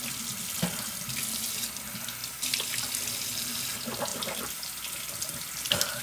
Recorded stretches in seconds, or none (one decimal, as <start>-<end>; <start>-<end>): 0.0-6.0